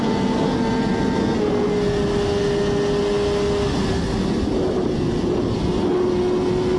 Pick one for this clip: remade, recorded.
recorded